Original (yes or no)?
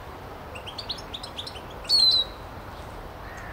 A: yes